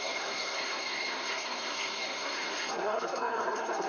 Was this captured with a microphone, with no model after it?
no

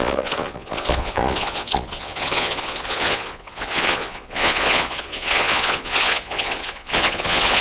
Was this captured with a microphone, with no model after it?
no